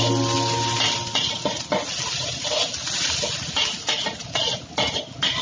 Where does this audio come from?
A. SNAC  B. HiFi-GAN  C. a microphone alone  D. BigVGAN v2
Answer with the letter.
C